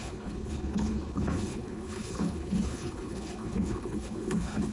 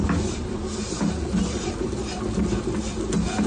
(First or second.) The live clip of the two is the second